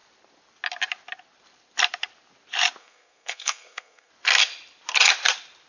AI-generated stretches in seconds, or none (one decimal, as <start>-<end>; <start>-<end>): 2.8-4.1

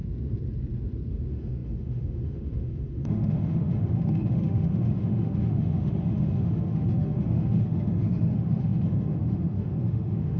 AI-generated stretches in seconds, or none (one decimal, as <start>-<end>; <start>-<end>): 1.1-10.4

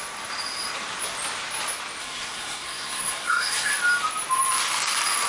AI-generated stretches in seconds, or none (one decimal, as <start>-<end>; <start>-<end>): 2.0-3.7

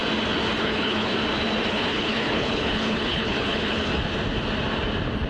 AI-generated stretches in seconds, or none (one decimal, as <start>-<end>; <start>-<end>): 0.6-1.1; 1.7-3.9

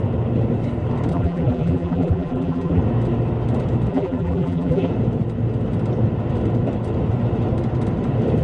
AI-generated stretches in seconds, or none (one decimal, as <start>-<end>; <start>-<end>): 1.1-2.8; 3.9-4.9

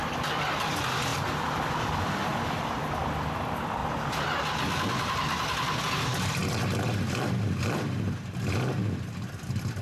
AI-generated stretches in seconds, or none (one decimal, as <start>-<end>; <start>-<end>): 0.0-1.1; 1.8-2.3; 3.0-3.8; 6.0-6.4; 7.3-9.8

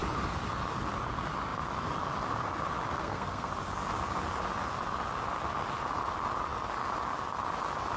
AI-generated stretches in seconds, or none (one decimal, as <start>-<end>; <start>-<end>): 2.9-3.5